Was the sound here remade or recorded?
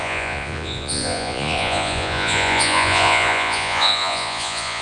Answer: remade